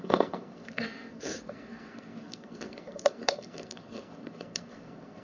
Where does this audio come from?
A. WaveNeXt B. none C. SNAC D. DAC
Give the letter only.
C